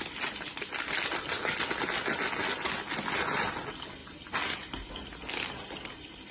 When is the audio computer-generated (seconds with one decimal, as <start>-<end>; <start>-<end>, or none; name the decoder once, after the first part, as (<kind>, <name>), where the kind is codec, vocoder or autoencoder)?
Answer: none